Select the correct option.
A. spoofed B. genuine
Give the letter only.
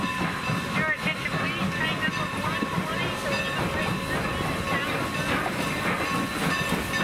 B